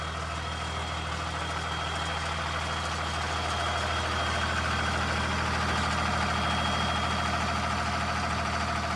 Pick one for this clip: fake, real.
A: real